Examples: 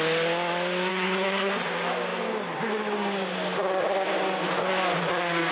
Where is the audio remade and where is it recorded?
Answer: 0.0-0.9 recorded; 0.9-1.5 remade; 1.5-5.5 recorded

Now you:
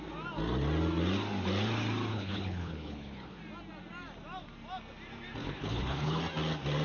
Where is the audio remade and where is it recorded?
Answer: 0.0-2.1 recorded; 2.1-3.4 remade; 3.4-5.4 recorded; 5.4-6.2 remade; 6.2-6.8 recorded

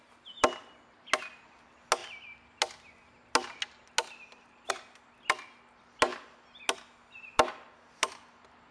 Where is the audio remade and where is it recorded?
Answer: 0.0-8.7 recorded

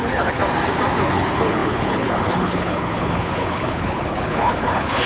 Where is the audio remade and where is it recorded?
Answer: 0.0-0.4 remade; 0.4-1.0 recorded; 1.0-5.1 remade

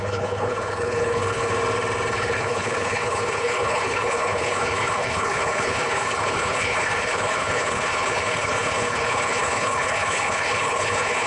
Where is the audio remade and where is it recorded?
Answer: 0.0-1.5 remade; 1.5-2.1 recorded; 2.1-11.3 remade

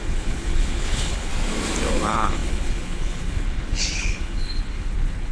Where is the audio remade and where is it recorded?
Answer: 0.0-1.3 remade; 1.3-1.9 recorded; 1.9-5.3 remade

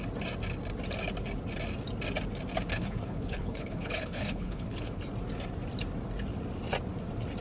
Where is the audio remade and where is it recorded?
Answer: 0.0-2.7 recorded; 2.7-5.0 remade; 5.0-7.4 recorded

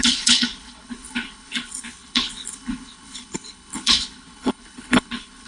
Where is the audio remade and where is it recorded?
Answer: 0.0-5.5 remade